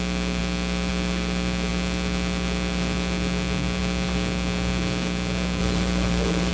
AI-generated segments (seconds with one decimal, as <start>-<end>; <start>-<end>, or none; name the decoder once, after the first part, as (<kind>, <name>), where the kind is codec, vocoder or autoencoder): 5.6-6.5 (vocoder, BigVGAN v2)

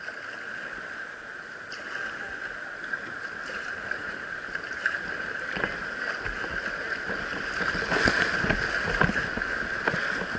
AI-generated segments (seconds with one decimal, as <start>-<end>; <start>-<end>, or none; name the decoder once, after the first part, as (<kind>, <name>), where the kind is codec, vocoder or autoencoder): 3.4-5.1 (vocoder, BigVGAN v2)

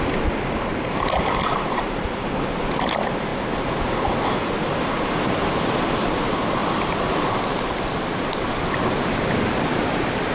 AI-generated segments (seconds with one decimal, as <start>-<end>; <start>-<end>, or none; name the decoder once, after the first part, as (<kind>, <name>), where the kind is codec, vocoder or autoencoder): 0.0-3.3 (vocoder, BigVGAN v2); 5.2-6.6; 7.8-10.3

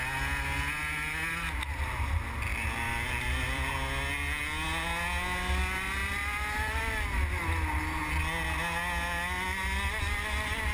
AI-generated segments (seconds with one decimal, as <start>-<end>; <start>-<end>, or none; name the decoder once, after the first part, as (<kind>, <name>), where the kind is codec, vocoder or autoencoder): 2.5-3.7 (vocoder, BigVGAN v2); 6.0-6.8

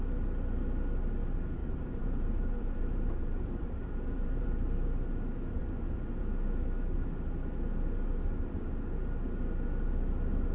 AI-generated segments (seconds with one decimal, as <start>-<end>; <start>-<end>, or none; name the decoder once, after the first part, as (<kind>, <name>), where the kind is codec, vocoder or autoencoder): 1.6-5.0 (vocoder, BigVGAN v2)